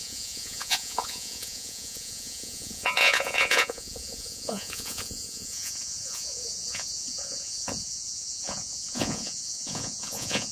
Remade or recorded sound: remade